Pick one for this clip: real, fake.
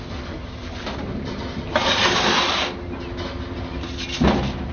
real